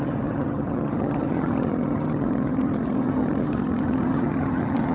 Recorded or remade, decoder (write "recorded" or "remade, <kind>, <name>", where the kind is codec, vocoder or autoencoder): remade, vocoder, HiFi-GAN